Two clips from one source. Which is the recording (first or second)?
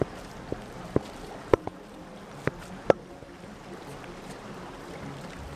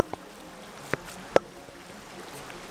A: second